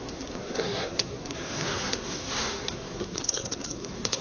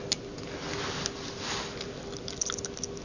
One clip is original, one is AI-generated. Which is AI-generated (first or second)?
first